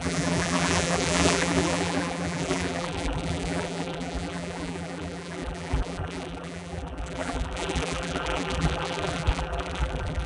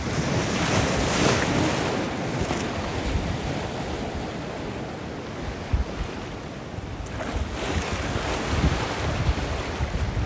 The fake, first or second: first